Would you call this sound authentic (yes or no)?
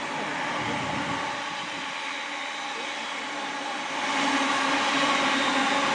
yes